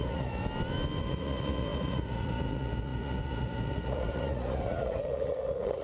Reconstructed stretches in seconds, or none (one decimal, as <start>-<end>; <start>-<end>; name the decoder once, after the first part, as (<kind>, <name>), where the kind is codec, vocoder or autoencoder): 0.0-0.4 (vocoder, Vocos); 1.0-5.8